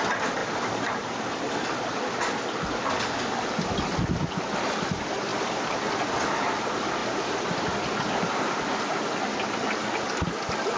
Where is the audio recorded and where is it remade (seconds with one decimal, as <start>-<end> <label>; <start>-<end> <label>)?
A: 0.0-0.4 recorded; 0.4-1.5 remade; 1.5-10.8 recorded